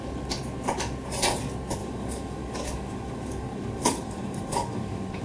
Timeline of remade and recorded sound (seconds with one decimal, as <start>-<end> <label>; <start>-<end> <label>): 0.0-1.8 recorded; 1.8-5.2 remade